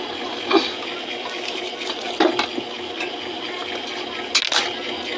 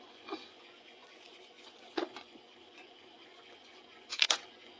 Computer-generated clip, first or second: second